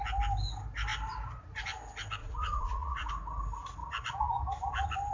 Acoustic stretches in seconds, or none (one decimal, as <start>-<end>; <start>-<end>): 0.0-2.2; 3.1-5.1